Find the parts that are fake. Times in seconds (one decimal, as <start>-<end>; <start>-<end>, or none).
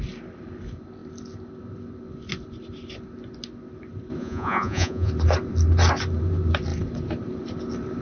4.2-5.1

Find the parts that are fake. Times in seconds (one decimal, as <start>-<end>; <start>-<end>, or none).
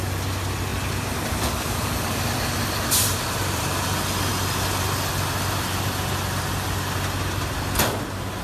0.7-3.6